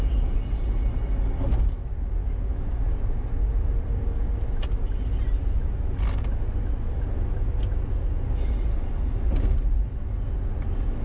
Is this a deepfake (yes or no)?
no